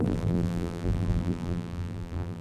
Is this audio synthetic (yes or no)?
yes